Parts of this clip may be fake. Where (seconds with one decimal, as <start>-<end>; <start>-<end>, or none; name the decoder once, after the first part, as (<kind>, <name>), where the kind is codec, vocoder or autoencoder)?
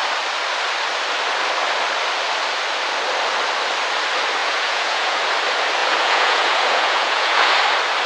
4.4-5.2 (vocoder, Vocos); 5.8-7.5